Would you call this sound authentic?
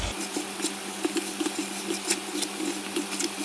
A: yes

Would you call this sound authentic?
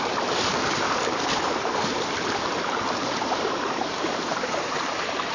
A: no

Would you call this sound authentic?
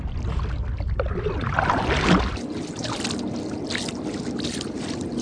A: yes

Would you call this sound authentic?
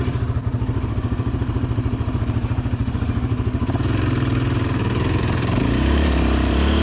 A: no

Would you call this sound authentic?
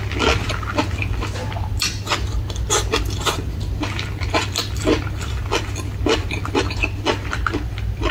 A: yes